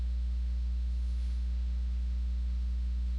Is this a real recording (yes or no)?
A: no